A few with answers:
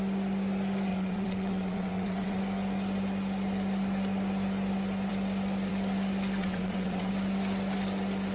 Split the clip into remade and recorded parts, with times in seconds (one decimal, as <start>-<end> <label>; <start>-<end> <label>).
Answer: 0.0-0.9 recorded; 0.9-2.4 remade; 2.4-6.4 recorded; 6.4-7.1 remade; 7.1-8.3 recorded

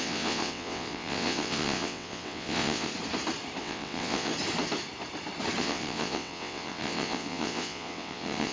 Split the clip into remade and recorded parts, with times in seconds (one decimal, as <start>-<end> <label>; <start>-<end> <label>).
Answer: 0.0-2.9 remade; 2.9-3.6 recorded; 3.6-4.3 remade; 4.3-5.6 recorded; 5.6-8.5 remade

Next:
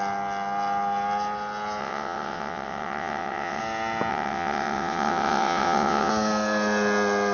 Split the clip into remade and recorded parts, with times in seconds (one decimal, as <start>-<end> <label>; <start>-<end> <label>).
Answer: 0.0-1.8 recorded; 1.8-3.6 remade; 3.6-4.1 recorded; 4.1-6.1 remade; 6.1-7.3 recorded

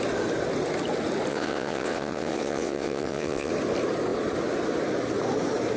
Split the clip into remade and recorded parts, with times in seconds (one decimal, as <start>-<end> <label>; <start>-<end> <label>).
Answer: 0.0-1.3 recorded; 1.3-3.5 remade; 3.5-5.8 recorded

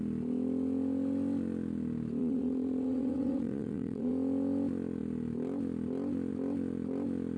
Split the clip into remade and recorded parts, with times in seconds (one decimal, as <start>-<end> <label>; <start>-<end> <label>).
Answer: 0.0-2.2 recorded; 2.2-4.1 remade; 4.1-7.4 recorded

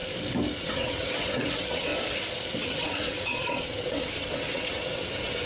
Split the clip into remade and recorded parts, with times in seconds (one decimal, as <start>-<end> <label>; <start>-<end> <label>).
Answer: 0.0-0.6 recorded; 0.6-1.9 remade; 1.9-2.6 recorded; 2.6-5.5 remade